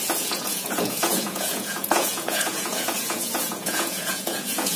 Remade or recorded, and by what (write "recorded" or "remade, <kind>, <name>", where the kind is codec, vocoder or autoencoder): remade, vocoder, Vocos